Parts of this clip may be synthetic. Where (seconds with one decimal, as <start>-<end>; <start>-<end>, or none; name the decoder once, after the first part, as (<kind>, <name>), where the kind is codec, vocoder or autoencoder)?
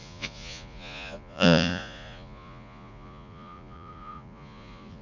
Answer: 0.0-5.0 (vocoder, Vocos)